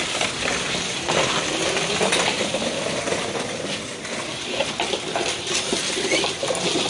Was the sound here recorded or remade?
recorded